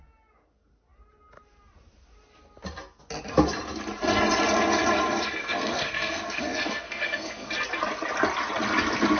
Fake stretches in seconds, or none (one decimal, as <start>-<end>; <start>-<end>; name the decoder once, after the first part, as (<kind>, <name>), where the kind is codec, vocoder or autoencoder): 5.4-7.5 (codec, SNAC)